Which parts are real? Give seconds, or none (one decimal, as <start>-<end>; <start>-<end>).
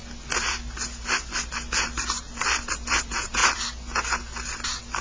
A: 0.0-3.0; 3.4-5.0